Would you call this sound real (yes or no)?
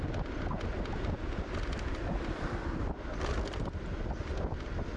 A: yes